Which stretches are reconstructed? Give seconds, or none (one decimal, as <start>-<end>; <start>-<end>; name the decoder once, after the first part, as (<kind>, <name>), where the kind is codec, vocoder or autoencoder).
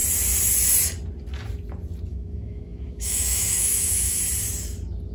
2.1-4.2 (autoencoder, DAC-VAE)